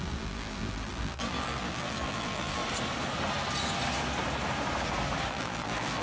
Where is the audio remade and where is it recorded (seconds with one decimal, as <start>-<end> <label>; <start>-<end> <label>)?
0.0-2.6 remade; 2.6-5.3 recorded; 5.3-6.0 remade